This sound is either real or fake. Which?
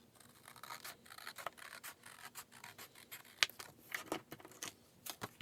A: real